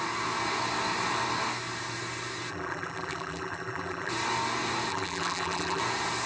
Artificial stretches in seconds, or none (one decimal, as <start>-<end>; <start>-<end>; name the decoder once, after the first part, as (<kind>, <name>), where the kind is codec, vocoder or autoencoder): 2.5-4.1 (vocoder, BigVGAN v2); 4.9-5.8